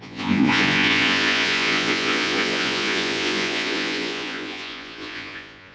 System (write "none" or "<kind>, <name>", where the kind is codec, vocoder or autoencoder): vocoder, Vocos